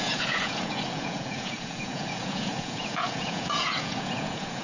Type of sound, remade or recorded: remade